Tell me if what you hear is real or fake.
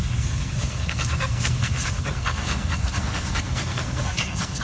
fake